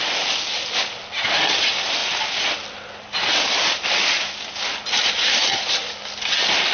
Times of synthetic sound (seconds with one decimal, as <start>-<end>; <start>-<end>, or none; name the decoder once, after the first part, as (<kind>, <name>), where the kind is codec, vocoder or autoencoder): none